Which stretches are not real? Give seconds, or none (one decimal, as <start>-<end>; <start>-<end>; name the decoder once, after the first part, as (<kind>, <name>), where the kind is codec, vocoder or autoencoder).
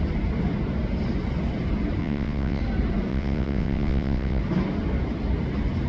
2.0-2.6 (vocoder, WaveNeXt); 3.1-4.4